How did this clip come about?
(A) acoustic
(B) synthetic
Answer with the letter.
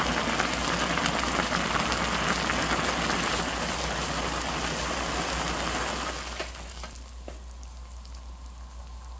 A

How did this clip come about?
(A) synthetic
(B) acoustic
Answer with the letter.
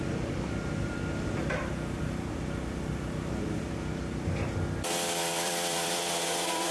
A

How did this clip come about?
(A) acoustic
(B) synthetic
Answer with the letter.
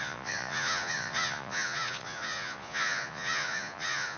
B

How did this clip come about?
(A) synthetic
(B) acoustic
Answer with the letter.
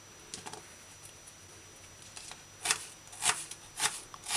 B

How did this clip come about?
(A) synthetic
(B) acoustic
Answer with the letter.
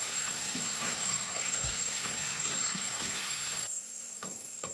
A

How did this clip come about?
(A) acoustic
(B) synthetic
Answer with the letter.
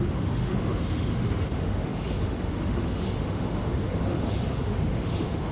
B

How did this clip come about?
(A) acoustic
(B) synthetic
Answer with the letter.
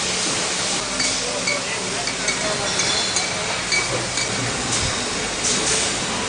A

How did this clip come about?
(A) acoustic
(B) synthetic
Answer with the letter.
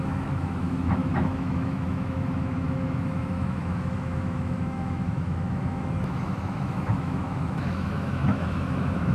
B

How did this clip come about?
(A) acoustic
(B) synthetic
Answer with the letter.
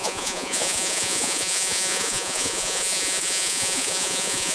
B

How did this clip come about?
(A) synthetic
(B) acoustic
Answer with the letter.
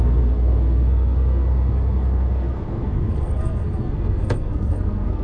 A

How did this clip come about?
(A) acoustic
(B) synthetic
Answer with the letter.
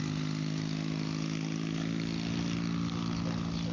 A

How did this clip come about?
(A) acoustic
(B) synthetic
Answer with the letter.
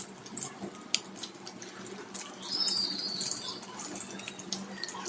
A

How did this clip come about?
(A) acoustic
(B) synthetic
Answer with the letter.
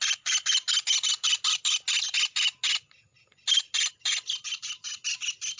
A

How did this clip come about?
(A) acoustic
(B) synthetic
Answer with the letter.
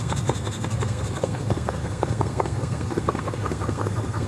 B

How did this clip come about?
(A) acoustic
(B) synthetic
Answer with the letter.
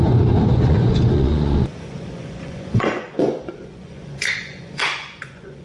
B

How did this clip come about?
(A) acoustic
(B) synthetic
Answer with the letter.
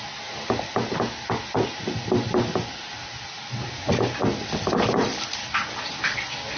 A